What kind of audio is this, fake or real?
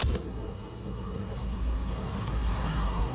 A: fake